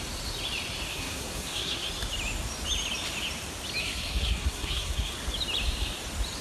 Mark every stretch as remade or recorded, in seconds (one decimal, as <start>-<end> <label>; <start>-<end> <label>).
0.0-0.9 recorded; 0.9-1.9 remade; 1.9-3.8 recorded; 3.8-5.1 remade; 5.1-6.4 recorded